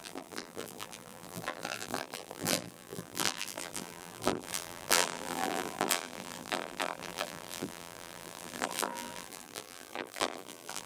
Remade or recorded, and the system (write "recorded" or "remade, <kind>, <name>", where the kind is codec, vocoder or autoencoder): remade, vocoder, BigVGAN v2